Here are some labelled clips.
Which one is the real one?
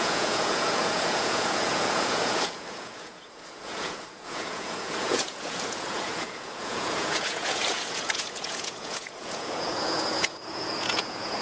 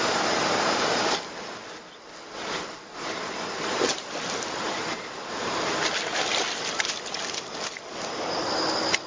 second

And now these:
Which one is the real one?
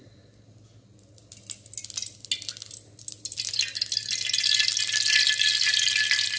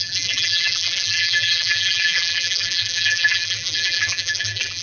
first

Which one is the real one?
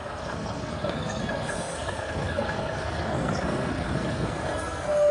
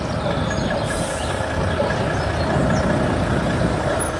second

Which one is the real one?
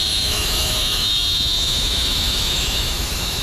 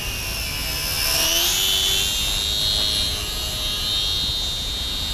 second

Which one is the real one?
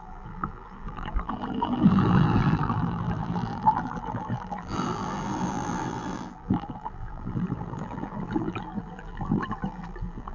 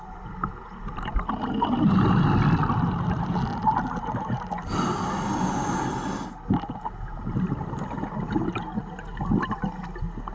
second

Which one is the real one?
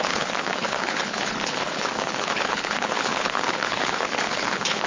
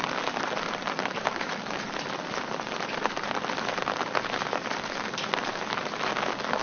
second